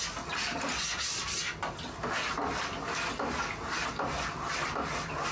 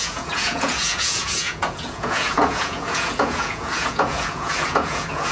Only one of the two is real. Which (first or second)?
first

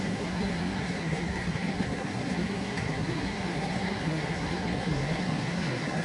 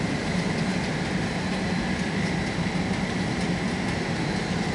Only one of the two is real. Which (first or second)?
second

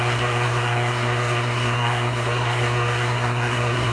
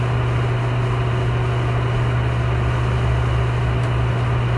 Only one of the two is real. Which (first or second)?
second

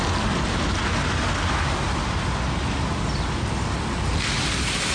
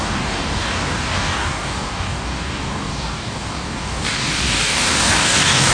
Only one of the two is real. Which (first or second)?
first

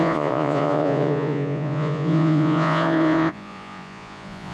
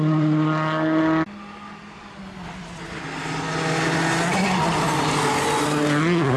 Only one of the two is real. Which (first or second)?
second